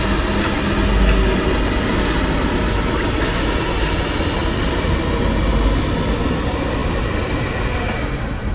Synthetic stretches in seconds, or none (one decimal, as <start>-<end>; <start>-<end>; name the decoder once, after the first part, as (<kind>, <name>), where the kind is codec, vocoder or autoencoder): 4.4-5.0 (vocoder, BigVGAN v2); 6.8-7.6